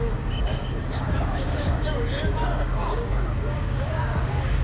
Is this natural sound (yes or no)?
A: no